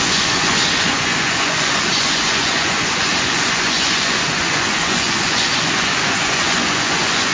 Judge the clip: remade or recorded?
remade